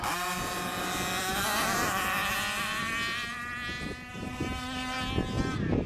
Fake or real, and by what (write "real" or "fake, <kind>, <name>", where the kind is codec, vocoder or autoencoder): real